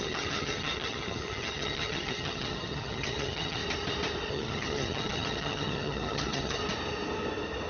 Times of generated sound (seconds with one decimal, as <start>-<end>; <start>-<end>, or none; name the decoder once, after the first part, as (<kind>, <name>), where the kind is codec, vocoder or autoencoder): 0.0-3.6 (vocoder, HiFi-GAN); 4.3-6.6